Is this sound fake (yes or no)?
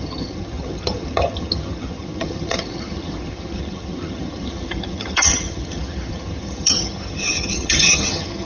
yes